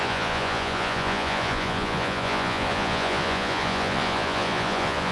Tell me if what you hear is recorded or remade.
remade